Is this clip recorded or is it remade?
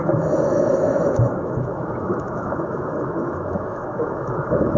remade